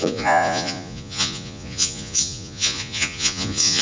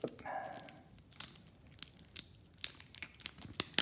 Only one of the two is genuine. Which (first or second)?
second